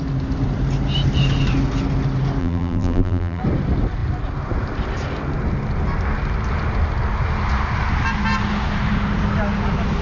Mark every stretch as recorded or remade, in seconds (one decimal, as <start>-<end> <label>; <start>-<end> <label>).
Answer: 0.0-2.4 recorded; 2.4-3.4 remade; 3.4-10.0 recorded